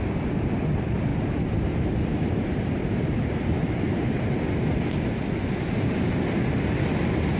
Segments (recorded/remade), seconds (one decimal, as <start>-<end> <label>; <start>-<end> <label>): 0.0-1.1 recorded; 1.1-4.4 remade; 4.4-7.4 recorded